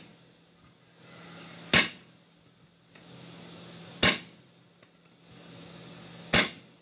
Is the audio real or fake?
real